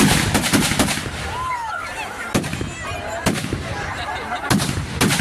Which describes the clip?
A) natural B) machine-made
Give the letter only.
A